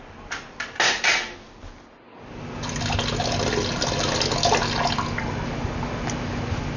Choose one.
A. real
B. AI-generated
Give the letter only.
A